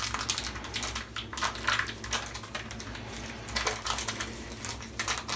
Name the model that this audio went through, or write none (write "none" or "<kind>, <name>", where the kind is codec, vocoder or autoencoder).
none